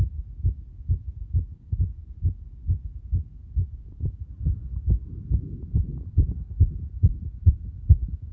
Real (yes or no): yes